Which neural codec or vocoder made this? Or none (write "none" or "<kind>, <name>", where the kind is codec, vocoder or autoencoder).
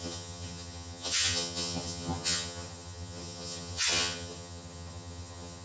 vocoder, HiFi-GAN